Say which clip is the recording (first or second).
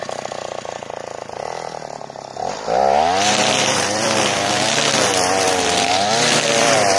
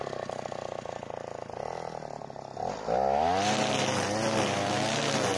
second